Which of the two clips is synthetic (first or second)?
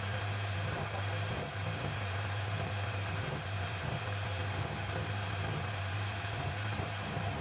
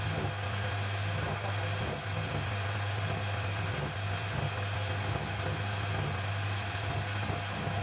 first